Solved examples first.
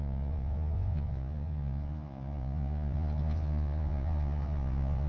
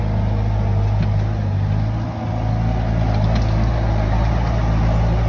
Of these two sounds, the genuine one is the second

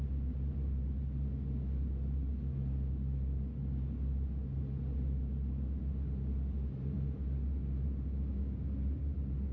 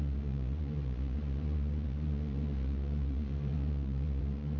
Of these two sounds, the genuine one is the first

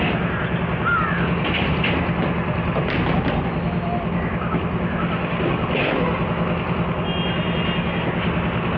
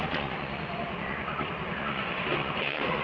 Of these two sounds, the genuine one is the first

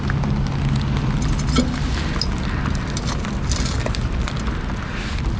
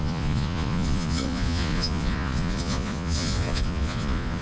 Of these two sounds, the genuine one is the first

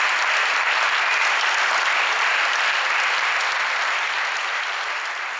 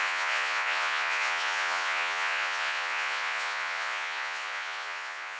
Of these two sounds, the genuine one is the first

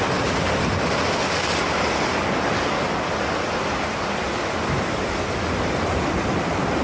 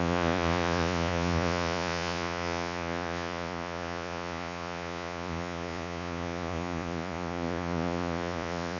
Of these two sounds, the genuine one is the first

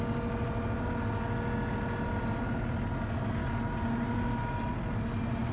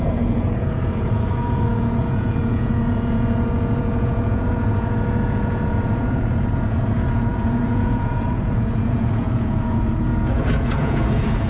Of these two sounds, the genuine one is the first